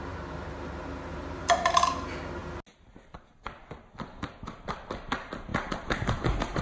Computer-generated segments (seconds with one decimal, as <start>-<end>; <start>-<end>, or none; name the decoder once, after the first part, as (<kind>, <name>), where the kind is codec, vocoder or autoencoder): 1.1-1.9 (vocoder, BigVGAN v2); 5.5-6.6